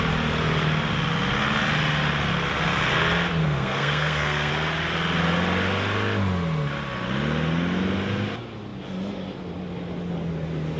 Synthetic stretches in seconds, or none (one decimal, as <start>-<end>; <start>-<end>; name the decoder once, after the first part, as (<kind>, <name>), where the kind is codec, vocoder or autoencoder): 3.4-4.5 (codec, SNAC)